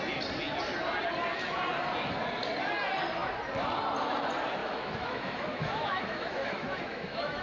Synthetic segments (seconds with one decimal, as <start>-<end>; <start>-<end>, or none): 4.6-7.4